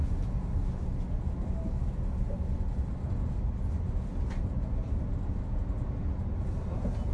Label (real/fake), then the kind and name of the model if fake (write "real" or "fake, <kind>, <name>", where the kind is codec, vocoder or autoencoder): real